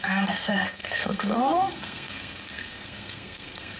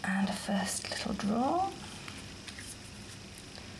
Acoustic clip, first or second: second